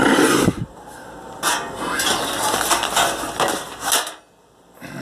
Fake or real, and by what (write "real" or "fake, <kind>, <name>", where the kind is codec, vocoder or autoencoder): real